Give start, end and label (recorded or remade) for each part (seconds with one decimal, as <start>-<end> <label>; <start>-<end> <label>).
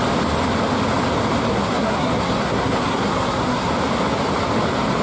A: 0.0-1.5 recorded; 1.5-3.7 remade; 3.7-5.0 recorded